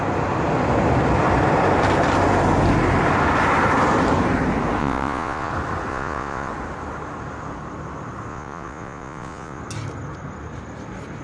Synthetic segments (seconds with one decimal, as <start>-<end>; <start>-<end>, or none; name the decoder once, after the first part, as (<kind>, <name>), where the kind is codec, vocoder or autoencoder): 4.8-5.5 (vocoder, Vocos); 5.9-6.5; 8.3-9.6